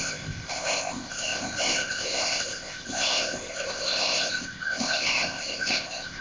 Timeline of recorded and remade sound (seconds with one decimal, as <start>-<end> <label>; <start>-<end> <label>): 0.0-6.2 remade